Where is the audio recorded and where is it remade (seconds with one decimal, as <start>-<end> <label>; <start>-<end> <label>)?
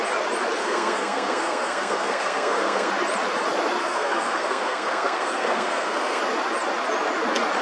0.0-0.6 recorded; 0.6-2.9 remade; 2.9-3.8 recorded; 3.8-6.2 remade; 6.2-7.6 recorded